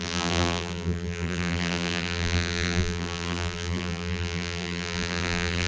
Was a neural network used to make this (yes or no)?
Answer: yes